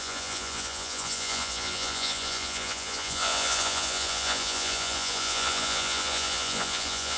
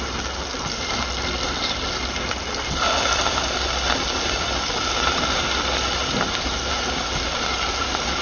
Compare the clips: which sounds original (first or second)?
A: second